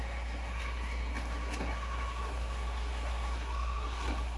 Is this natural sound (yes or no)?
no